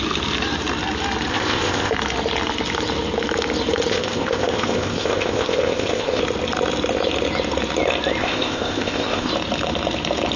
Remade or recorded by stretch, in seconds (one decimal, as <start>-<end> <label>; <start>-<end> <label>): 0.0-1.3 recorded; 1.3-1.9 remade; 1.9-3.9 recorded; 3.9-6.2 remade; 6.2-8.2 recorded; 8.2-9.3 remade; 9.3-10.4 recorded